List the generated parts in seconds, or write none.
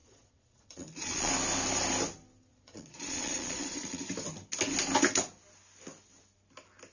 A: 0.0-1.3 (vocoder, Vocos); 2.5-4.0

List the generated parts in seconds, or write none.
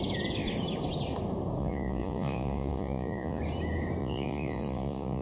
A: 1.6-3.4 (vocoder, Vocos); 4.0-5.2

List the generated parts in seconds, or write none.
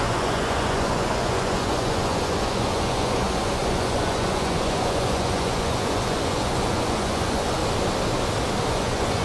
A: 0.0-7.6 (vocoder, Vocos); 8.7-9.2